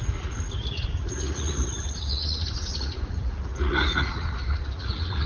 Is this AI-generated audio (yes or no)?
yes